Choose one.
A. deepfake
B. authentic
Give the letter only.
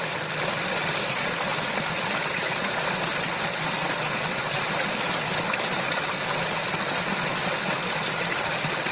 B